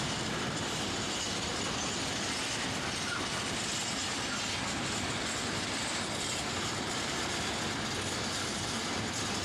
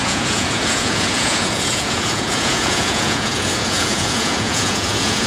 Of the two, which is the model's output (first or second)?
second